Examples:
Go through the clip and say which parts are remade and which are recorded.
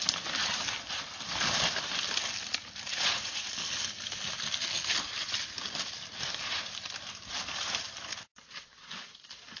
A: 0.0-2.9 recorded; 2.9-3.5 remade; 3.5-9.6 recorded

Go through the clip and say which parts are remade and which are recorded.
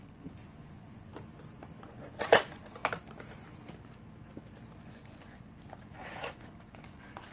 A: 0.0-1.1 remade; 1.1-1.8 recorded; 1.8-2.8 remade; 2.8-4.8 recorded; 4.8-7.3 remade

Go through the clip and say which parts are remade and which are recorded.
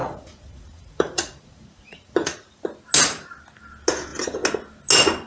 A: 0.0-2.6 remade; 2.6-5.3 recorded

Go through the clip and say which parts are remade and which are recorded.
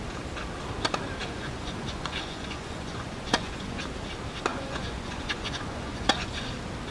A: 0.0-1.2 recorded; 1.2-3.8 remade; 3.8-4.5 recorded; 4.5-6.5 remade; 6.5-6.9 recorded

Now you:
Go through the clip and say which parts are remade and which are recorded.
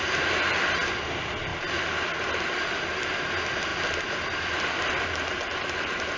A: 0.0-6.2 recorded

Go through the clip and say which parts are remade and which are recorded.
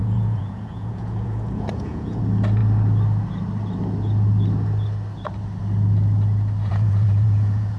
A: 0.0-2.2 remade; 2.2-6.7 recorded; 6.7-7.8 remade